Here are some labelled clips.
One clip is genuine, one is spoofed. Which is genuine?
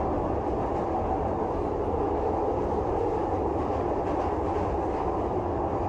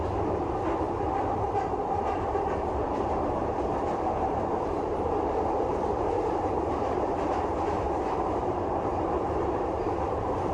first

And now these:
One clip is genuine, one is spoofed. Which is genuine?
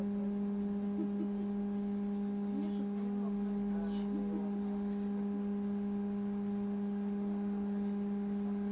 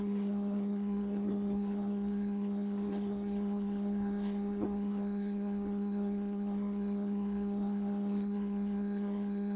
first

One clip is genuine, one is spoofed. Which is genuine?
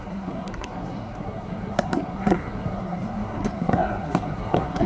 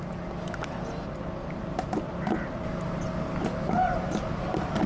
second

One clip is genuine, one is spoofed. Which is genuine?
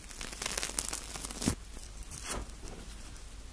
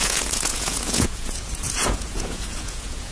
first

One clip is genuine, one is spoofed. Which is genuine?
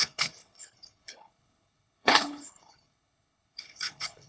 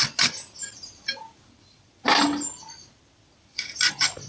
second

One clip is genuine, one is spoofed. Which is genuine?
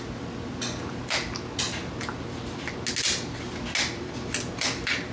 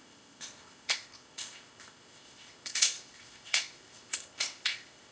first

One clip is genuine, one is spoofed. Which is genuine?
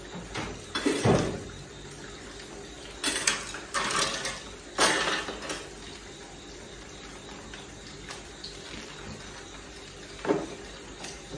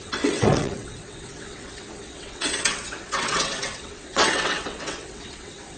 first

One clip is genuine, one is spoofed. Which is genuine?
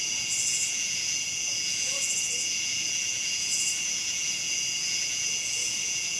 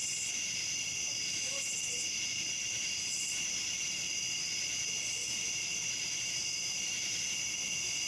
second